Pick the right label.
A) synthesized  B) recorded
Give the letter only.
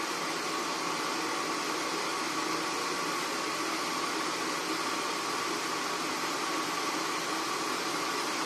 B